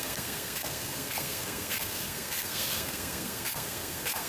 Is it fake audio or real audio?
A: fake